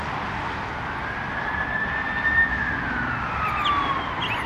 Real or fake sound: real